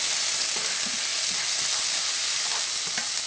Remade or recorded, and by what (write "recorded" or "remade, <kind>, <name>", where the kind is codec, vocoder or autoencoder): recorded